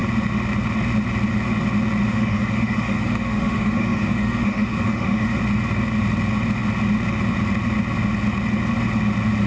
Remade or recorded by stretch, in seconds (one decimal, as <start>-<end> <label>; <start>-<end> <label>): 0.0-2.1 recorded; 2.1-5.4 remade; 5.4-9.5 recorded